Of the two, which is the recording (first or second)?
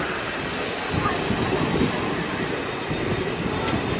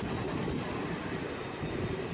first